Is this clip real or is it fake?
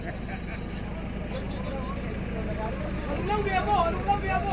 real